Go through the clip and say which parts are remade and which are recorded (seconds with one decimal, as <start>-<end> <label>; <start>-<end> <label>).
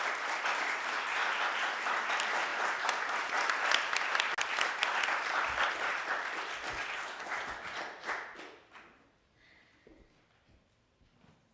0.0-11.5 recorded